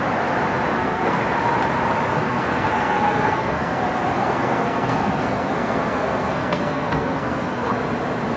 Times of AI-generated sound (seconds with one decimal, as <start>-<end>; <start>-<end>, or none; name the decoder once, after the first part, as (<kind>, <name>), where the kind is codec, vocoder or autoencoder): 0.7-1.2 (codec, SNAC); 2.1-3.8; 4.2-7.7